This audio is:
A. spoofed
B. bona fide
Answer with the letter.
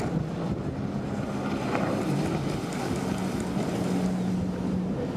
B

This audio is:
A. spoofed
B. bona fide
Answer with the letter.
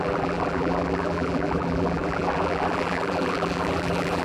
A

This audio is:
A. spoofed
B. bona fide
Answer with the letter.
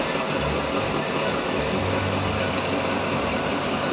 B